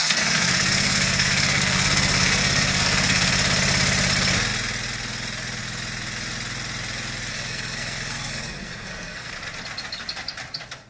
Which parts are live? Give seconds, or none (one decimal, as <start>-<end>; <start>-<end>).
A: 3.3-7.3; 9.3-10.9